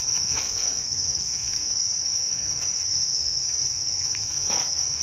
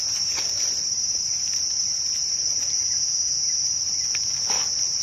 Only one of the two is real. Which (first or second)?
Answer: second